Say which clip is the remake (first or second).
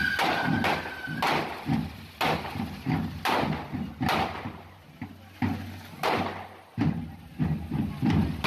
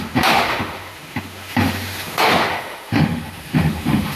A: second